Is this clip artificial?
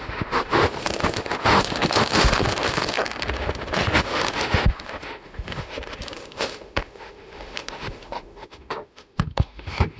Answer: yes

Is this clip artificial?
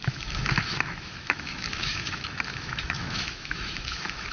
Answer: yes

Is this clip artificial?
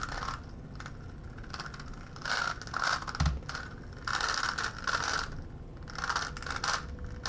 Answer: no